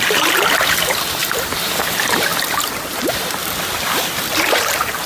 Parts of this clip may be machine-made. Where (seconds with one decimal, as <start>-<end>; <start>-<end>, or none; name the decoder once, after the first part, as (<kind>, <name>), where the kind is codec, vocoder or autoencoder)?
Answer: 0.0-1.2 (vocoder, BigVGAN v2); 1.8-2.3; 2.9-3.4; 4.5-5.1

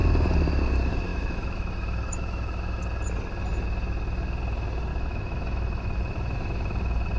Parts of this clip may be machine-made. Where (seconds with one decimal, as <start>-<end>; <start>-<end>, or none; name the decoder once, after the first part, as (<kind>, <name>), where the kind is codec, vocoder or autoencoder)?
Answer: 1.1-2.8 (autoencoder, DAC-VAE); 4.9-5.8

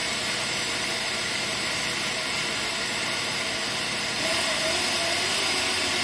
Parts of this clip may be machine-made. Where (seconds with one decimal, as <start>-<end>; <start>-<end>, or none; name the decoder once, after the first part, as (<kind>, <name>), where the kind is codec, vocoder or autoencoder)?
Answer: 0.0-3.4 (vocoder, BigVGAN v2)

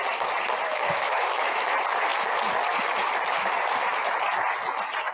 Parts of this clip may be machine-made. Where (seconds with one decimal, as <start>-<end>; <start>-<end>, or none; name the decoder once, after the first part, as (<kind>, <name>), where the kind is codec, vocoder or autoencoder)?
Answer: 0.7-1.7 (autoencoder, DAC-VAE)

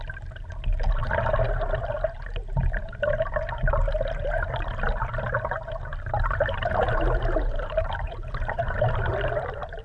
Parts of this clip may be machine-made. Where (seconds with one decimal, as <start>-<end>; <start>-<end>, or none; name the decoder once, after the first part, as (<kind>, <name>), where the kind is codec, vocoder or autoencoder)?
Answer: 5.9-9.1 (vocoder, BigVGAN v2)

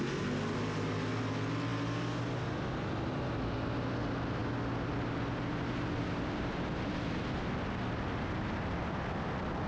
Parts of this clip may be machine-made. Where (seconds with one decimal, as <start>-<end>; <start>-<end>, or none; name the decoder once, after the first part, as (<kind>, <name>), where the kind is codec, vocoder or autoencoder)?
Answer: none

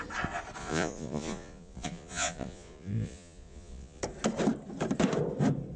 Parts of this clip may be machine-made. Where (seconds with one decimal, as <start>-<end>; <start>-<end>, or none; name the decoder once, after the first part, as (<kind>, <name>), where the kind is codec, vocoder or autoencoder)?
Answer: 0.6-4.0 (vocoder, Vocos)